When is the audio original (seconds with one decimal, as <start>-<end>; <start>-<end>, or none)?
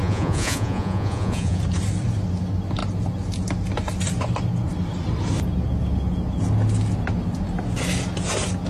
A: 1.6-8.7